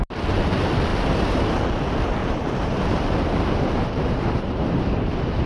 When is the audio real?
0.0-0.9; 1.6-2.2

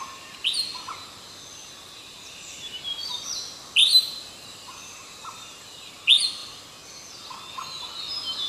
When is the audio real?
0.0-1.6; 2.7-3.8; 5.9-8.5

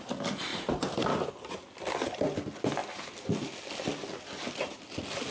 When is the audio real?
0.0-0.5; 1.3-5.3

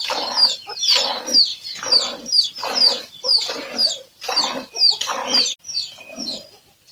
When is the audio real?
0.0-1.5; 4.4-6.9